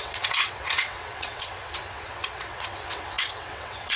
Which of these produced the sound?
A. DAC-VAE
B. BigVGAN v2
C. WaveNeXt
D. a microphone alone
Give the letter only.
C